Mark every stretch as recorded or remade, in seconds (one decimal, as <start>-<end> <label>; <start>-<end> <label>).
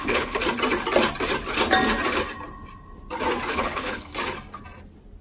0.0-0.4 remade; 0.4-3.5 recorded; 3.5-4.1 remade; 4.1-5.2 recorded